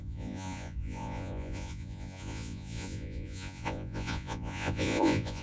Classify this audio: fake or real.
fake